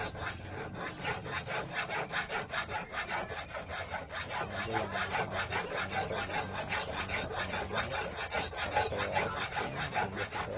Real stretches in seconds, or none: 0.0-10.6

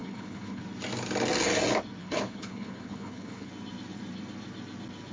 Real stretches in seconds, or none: 0.6-2.0; 3.5-5.1